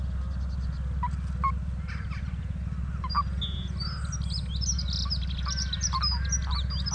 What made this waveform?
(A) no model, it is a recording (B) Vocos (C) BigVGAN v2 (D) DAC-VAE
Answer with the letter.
A